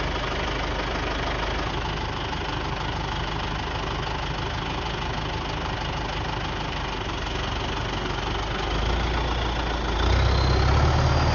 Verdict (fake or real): real